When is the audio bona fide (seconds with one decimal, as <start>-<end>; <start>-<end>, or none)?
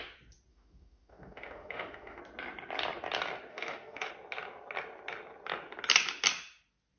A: 0.0-0.5; 2.2-3.5; 4.1-7.0